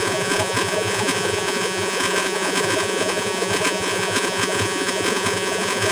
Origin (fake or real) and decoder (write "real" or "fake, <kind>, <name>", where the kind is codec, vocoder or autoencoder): fake, vocoder, Vocos